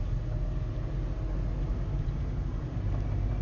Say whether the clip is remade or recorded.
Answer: recorded